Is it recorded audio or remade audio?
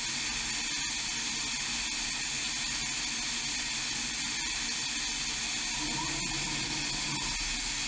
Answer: recorded